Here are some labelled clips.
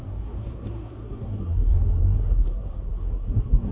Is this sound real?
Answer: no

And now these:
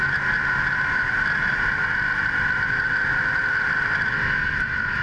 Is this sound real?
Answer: yes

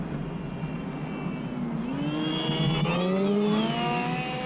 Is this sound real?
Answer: yes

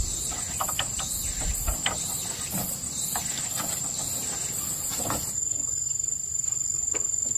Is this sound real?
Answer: yes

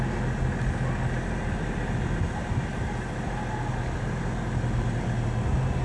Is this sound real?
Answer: yes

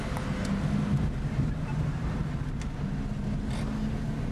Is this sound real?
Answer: yes